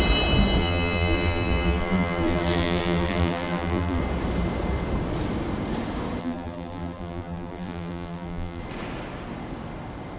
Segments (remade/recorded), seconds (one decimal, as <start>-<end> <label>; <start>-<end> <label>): 0.0-0.6 recorded; 0.6-4.0 remade; 4.0-6.2 recorded; 6.2-8.6 remade; 8.6-10.2 recorded